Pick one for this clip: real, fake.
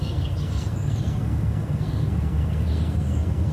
fake